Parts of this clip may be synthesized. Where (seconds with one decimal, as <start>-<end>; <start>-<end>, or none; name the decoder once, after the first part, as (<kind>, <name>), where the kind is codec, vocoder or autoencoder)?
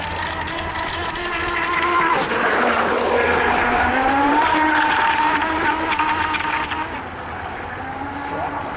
1.4-2.0 (vocoder, BigVGAN v2); 3.7-5.6